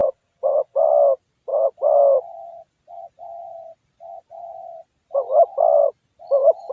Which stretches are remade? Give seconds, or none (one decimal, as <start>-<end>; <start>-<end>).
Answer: 0.0-0.8